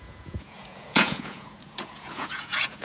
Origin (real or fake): fake